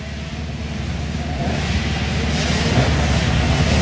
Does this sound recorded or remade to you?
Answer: recorded